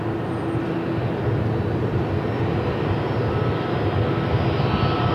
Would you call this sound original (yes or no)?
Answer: yes